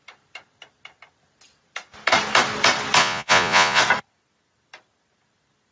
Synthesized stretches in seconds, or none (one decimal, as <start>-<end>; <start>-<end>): 3.0-3.8